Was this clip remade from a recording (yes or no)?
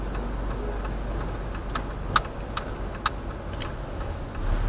no